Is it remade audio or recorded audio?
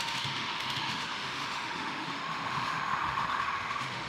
remade